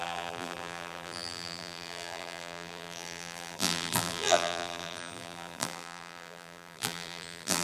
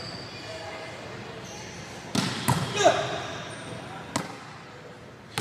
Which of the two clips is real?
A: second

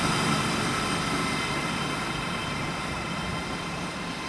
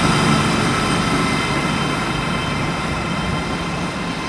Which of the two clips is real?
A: second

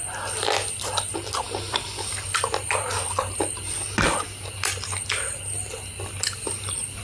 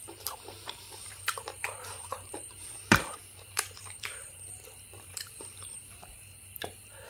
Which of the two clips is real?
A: first